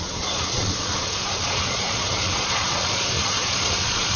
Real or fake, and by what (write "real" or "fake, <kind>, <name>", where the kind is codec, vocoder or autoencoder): fake, vocoder, Vocos